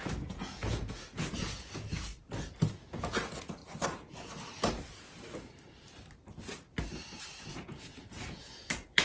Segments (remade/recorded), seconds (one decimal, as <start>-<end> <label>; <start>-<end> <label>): 0.0-2.1 remade; 2.1-2.9 recorded; 2.9-3.6 remade; 3.6-7.5 recorded; 7.5-9.0 remade